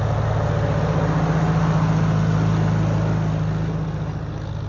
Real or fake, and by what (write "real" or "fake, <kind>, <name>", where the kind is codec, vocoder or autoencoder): real